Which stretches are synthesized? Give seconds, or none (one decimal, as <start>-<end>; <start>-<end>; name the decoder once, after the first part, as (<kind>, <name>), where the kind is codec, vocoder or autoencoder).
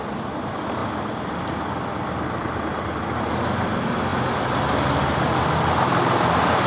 none